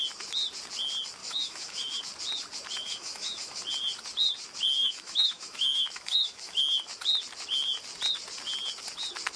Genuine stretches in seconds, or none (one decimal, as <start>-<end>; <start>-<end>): 0.0-1.2; 2.0-2.8; 3.6-4.8; 6.6-9.4